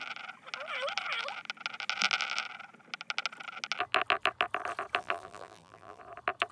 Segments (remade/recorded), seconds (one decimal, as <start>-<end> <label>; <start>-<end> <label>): 0.0-5.0 recorded; 5.0-6.0 remade; 6.0-6.5 recorded